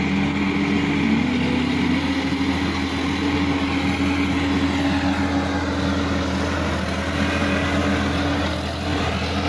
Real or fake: real